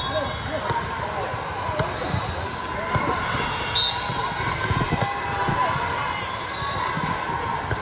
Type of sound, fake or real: real